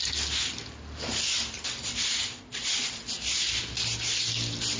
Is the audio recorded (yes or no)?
yes